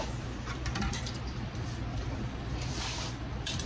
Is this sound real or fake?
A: fake